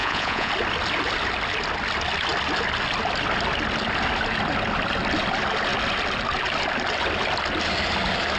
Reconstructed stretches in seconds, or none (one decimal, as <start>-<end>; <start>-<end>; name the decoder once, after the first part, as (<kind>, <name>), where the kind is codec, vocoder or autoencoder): 0.0-0.5 (vocoder, Vocos)